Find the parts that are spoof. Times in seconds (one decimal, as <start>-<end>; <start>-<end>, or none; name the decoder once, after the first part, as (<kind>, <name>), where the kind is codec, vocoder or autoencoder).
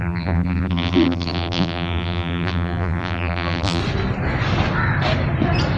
0.0-3.8 (vocoder, BigVGAN v2)